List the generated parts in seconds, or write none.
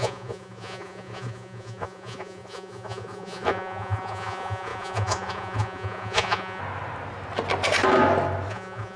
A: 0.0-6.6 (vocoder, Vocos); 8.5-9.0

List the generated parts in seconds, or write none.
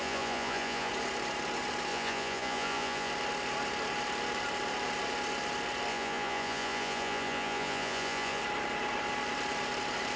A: 0.0-0.9 (vocoder, Vocos); 1.9-3.1; 5.9-8.4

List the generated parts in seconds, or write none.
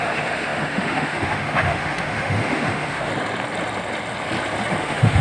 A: 0.0-3.1 (autoencoder, DAC-VAE); 4.8-5.2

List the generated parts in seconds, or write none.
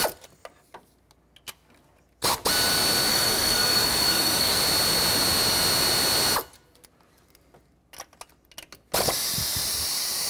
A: 3.1-4.6 (codec, SNAC)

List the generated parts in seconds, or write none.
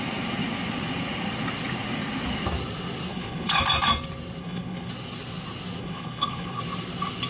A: 3.1-3.6 (codec, HILCodec); 4.4-4.9; 5.8-6.6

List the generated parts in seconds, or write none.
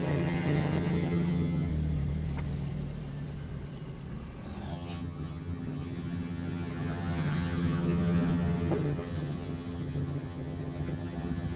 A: 0.0-1.7 (vocoder, HiFi-GAN); 4.7-11.6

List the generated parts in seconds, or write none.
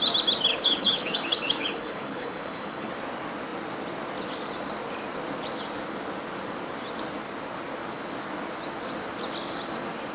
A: 0.5-2.9 (codec, HILCodec)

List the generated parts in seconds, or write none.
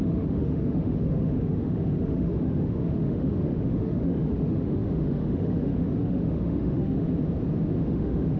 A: 0.0-7.1 (autoencoder, DAC-VAE); 7.8-8.4